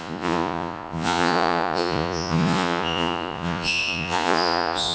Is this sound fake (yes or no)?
yes